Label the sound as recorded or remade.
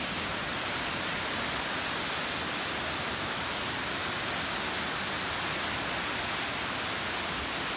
recorded